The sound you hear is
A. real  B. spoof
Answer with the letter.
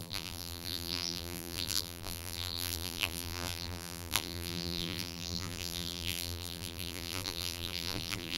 B